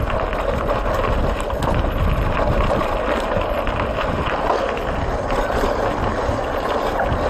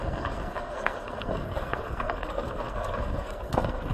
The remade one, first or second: second